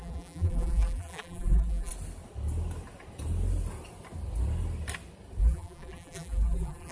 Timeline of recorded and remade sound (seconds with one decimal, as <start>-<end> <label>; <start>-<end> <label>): 0.0-1.9 remade; 1.9-5.4 recorded; 5.4-6.9 remade